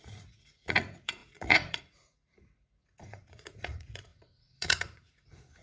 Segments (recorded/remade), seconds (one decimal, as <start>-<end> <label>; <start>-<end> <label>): 0.0-5.6 remade